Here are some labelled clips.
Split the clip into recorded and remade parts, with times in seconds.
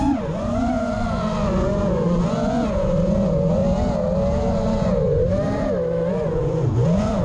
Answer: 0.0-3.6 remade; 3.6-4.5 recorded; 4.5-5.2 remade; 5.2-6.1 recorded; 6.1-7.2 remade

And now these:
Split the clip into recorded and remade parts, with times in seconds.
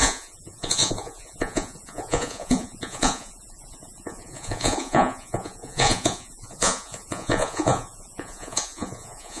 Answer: 0.0-9.4 remade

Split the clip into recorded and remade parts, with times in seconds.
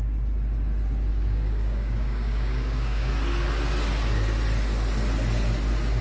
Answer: 0.0-1.1 recorded; 1.1-3.1 remade; 3.1-6.0 recorded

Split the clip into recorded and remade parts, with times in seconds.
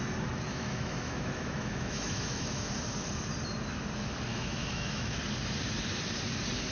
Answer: 0.0-0.5 recorded; 0.5-2.7 remade; 2.7-4.3 recorded; 4.3-5.2 remade; 5.2-6.7 recorded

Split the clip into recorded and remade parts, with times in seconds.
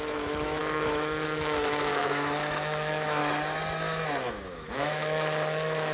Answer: 0.0-3.2 remade; 3.2-4.3 recorded; 4.3-5.9 remade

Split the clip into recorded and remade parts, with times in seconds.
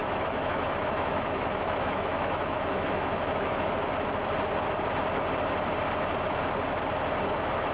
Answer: 0.0-3.7 remade; 3.7-7.7 recorded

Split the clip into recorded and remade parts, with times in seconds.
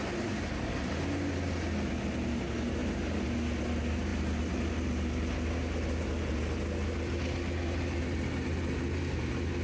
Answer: 0.0-9.6 recorded